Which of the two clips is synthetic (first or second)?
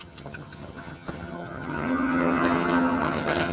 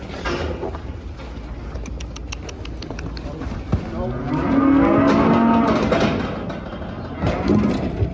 first